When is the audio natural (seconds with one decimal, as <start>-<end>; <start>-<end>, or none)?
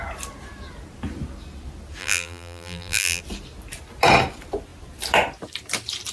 0.0-2.0; 3.2-6.1